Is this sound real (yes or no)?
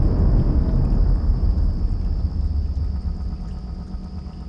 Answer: yes